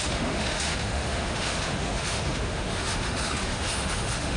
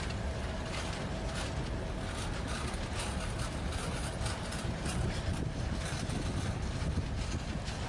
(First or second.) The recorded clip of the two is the second